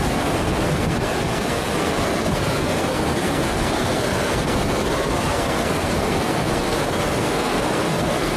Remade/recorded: remade